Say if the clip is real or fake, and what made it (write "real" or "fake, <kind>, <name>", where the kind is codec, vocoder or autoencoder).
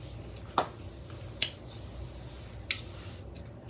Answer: real